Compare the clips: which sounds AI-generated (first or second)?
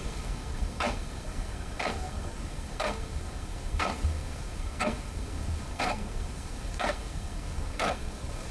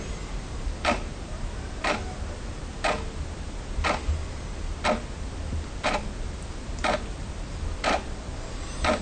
first